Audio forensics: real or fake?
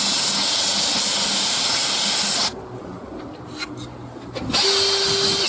real